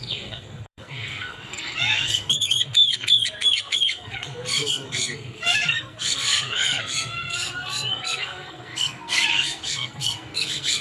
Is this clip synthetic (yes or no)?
yes